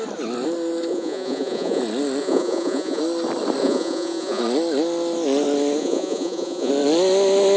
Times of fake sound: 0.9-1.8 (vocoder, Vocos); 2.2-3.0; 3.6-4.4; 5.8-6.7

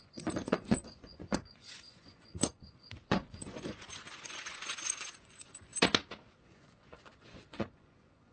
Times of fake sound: 0.0-5.7 (vocoder, Vocos); 6.4-8.3

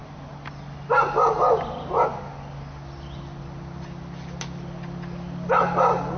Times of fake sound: none